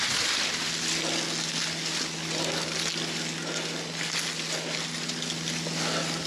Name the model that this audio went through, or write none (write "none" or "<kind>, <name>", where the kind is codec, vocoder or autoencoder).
none